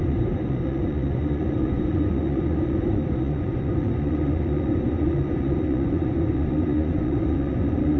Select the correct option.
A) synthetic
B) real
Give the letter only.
A